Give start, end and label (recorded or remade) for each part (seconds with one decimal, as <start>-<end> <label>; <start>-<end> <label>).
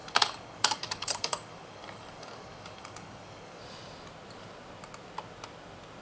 0.0-3.6 remade; 3.6-6.0 recorded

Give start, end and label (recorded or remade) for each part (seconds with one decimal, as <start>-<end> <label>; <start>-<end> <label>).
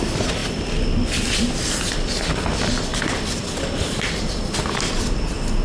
0.0-5.6 recorded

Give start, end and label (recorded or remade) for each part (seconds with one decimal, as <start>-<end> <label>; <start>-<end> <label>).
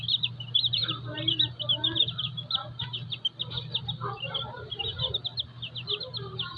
0.0-6.6 recorded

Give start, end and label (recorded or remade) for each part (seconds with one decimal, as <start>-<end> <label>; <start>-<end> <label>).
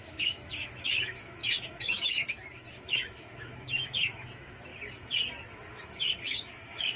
0.0-4.7 remade; 4.7-5.7 recorded; 5.7-7.0 remade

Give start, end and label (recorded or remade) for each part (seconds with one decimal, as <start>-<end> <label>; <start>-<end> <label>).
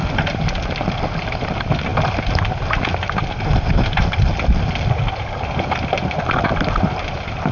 0.0-7.5 recorded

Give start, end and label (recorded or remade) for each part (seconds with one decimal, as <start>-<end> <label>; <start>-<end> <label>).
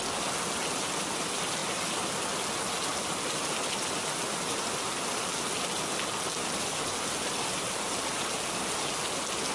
0.0-1.6 recorded; 1.6-2.2 remade; 2.2-2.9 recorded; 2.9-4.9 remade; 4.9-9.5 recorded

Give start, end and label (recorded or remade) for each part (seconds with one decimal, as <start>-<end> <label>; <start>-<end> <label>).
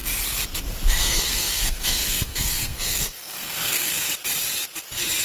0.0-1.0 recorded; 1.0-4.1 remade; 4.1-5.2 recorded